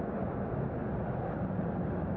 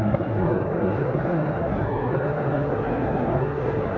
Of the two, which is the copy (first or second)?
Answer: second